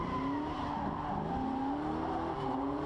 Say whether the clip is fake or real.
real